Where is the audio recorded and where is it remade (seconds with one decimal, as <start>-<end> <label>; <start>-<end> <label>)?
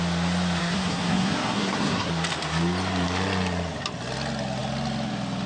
0.0-0.6 recorded; 0.6-2.1 remade; 2.1-5.5 recorded